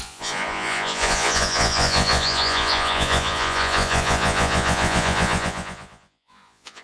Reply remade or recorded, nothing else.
remade